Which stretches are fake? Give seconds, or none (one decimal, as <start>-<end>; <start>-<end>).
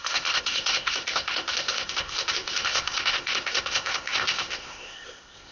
0.0-5.5